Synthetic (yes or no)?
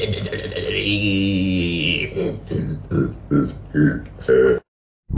no